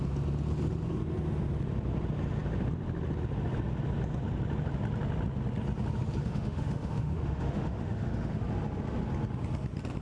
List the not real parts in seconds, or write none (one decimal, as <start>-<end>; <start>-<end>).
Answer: 6.2-8.4